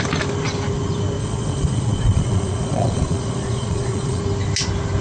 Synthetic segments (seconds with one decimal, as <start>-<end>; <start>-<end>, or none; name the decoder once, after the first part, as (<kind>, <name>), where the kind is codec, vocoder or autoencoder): 1.2-4.2 (vocoder, Vocos)